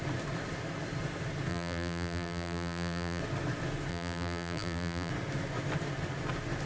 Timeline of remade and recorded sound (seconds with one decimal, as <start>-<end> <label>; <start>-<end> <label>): 0.0-1.5 recorded; 1.5-3.2 remade; 3.2-3.9 recorded; 3.9-5.1 remade; 5.1-6.7 recorded